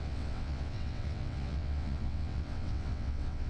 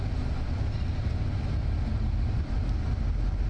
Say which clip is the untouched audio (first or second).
second